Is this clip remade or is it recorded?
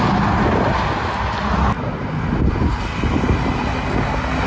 recorded